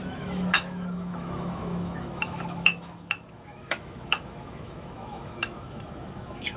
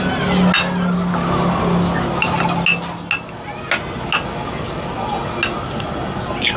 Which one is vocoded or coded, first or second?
first